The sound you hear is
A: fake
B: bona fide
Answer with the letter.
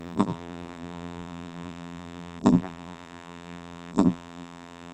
A